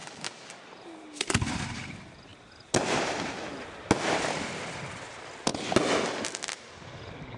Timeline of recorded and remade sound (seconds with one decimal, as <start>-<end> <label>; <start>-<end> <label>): 0.0-0.6 remade; 0.6-7.4 recorded